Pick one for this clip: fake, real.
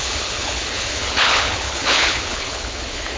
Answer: fake